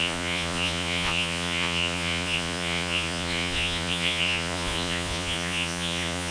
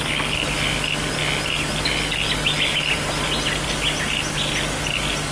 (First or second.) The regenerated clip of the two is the first